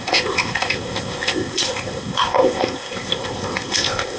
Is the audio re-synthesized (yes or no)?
yes